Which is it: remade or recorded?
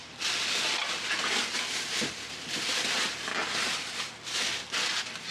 recorded